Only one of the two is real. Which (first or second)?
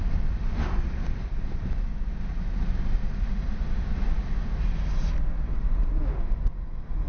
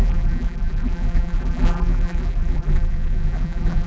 first